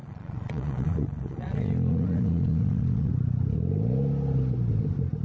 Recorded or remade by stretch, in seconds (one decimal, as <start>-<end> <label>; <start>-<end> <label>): 0.0-3.1 remade; 3.1-5.2 recorded